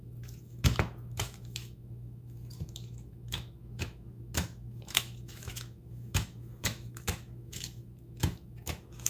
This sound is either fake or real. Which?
fake